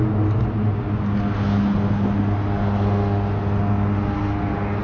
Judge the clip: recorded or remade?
recorded